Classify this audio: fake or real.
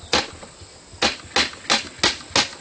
real